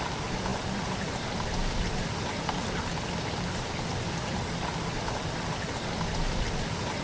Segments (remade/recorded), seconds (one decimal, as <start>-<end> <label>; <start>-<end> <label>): 0.0-7.0 recorded